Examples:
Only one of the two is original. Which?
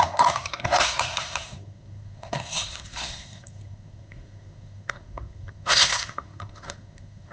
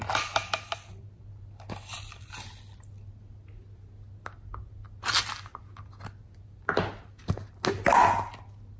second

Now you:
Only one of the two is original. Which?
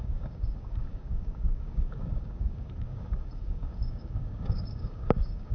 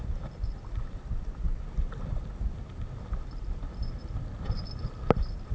second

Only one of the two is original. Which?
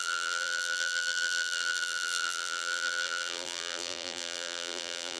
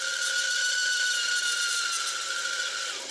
second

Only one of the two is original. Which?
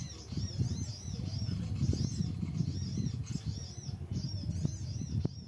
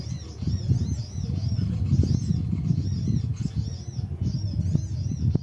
second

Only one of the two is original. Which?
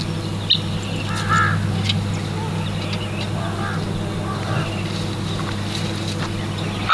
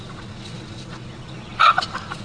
first